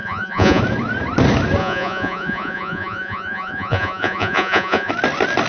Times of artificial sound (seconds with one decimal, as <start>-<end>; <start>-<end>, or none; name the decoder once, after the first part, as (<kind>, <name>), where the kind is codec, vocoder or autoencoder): 0.0-0.6 (vocoder, Vocos); 1.6-4.9

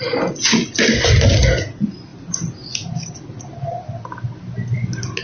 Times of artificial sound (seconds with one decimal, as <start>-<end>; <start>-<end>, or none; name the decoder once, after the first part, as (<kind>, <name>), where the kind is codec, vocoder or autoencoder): none

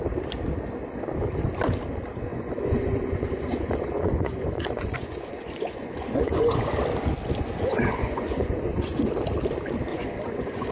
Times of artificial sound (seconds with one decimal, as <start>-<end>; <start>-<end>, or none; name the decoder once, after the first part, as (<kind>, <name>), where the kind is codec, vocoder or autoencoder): 2.3-6.7 (vocoder, Vocos); 7.7-9.0; 9.9-10.7

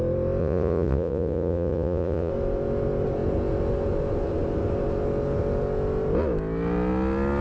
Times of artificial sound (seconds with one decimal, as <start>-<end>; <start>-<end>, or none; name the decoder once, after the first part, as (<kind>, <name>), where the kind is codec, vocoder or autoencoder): 0.4-2.3 (vocoder, Vocos)

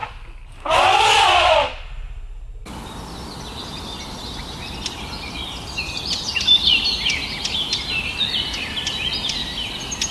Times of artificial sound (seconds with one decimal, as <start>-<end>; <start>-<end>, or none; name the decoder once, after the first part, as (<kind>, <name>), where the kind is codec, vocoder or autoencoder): none

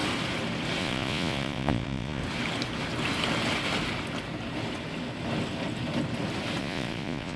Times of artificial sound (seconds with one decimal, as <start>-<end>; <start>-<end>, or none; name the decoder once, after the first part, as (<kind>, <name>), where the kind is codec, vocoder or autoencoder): 0.8-2.2 (vocoder, Vocos); 6.6-7.4

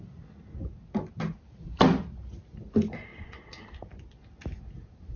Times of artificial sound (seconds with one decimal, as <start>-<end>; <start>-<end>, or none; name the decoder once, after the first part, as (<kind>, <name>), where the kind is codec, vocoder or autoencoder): 3.1-3.7 (vocoder, Vocos)